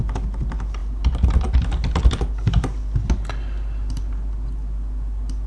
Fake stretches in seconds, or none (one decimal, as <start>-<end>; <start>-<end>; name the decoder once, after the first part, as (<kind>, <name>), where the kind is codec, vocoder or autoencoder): none

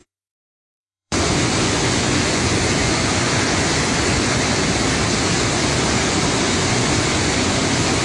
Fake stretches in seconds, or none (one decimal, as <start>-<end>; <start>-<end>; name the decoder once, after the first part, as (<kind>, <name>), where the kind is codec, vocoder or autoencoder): 0.0-4.8 (vocoder, Vocos); 5.4-8.0

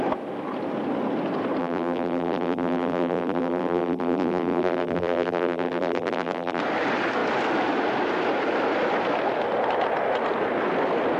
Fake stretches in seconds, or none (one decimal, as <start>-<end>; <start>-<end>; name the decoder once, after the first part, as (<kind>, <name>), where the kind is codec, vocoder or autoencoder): 1.6-6.6 (vocoder, BigVGAN v2)

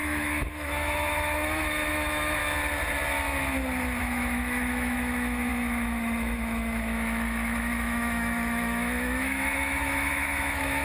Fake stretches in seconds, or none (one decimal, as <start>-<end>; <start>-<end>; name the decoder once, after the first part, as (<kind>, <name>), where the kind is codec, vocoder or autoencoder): 0.0-2.4 (autoencoder, DAC-VAE); 4.0-10.8

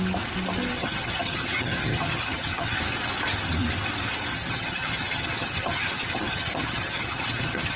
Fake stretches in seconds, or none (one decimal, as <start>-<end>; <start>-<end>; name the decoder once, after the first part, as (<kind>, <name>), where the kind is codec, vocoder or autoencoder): 0.8-2.8 (vocoder, HiFi-GAN); 4.3-7.8